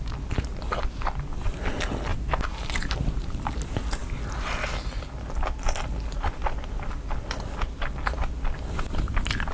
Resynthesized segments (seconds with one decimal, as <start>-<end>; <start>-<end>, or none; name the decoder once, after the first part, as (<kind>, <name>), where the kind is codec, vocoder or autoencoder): 2.1-3.5 (vocoder, BigVGAN v2)